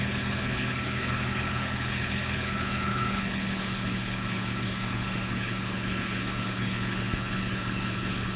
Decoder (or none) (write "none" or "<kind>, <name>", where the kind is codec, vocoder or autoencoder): codec, HILCodec